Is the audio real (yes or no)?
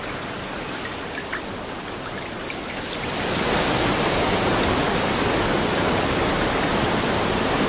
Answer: yes